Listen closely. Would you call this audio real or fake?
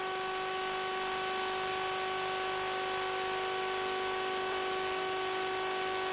real